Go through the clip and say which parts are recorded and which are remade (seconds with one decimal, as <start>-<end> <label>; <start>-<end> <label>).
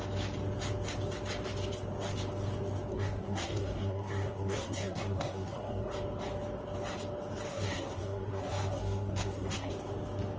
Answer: 0.0-2.9 recorded; 2.9-5.9 remade; 5.9-7.5 recorded; 7.5-9.7 remade; 9.7-10.4 recorded